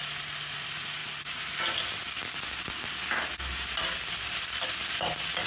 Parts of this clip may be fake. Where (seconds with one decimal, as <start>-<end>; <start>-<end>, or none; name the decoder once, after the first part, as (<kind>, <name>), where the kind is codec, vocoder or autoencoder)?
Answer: none